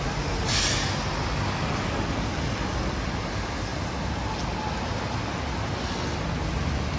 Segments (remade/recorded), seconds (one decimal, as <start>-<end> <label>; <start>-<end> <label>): 0.0-7.0 recorded